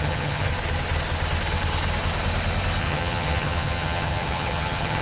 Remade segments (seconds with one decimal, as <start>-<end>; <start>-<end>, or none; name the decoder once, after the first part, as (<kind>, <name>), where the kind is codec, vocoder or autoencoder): 0.0-0.5 (vocoder, HiFi-GAN); 2.8-5.0